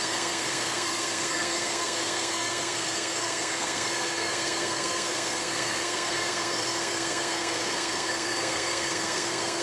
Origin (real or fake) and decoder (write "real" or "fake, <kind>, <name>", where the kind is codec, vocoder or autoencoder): fake, codec, SNAC